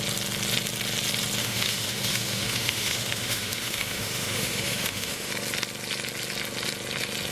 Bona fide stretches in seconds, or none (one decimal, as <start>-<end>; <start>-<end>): 0.0-1.4; 5.3-7.3